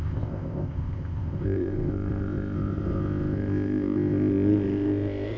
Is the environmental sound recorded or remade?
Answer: remade